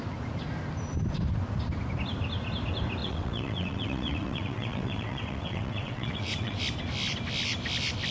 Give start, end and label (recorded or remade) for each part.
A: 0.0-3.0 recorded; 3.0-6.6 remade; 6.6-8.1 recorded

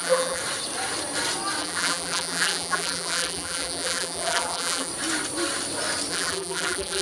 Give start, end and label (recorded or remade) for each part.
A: 0.0-0.4 remade; 0.4-1.6 recorded; 1.6-4.9 remade; 4.9-6.1 recorded; 6.1-7.0 remade

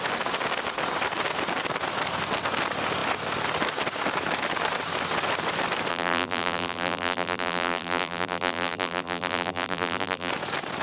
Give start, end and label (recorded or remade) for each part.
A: 0.0-5.9 recorded; 5.9-10.3 remade; 10.3-10.8 recorded

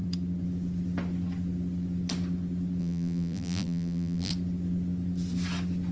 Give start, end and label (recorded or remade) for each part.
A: 0.0-2.8 recorded; 2.8-4.3 remade; 4.3-5.9 recorded

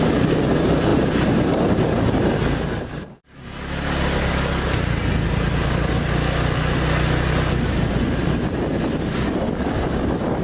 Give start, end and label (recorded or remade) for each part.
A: 0.0-10.4 recorded

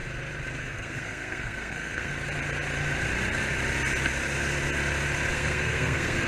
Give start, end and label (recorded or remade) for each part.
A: 0.0-0.6 recorded; 0.6-2.1 remade; 2.1-5.3 recorded; 5.3-6.3 remade

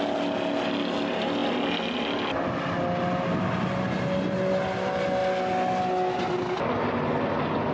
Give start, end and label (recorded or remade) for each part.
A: 0.0-7.7 recorded

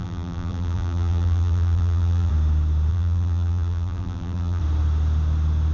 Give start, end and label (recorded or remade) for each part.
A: 0.0-2.3 remade; 2.3-2.9 recorded; 2.9-4.6 remade; 4.6-5.7 recorded